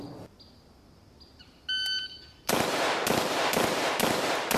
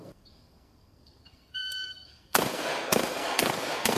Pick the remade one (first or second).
second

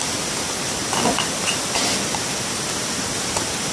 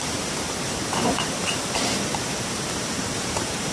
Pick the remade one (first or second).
second